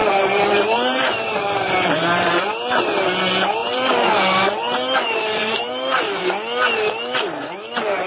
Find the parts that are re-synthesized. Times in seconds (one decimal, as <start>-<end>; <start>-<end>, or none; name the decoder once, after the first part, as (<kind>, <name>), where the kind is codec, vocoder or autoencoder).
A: 0.0-2.8 (vocoder, BigVGAN v2); 3.6-6.2